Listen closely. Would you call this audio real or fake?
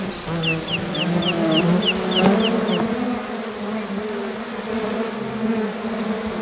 real